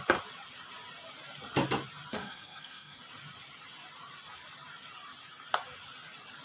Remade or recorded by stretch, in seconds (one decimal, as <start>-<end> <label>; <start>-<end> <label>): 0.0-2.1 recorded; 2.1-3.0 remade; 3.0-6.4 recorded